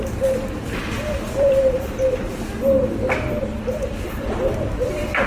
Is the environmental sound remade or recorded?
remade